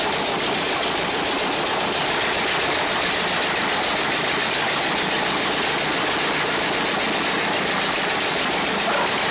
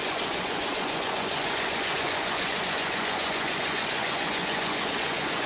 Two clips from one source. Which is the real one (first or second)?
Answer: first